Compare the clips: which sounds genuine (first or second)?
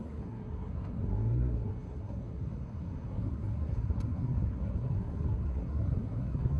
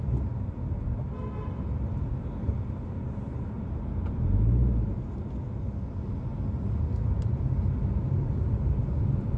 second